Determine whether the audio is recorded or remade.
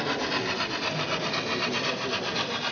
recorded